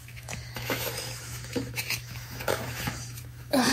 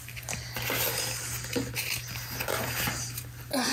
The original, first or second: second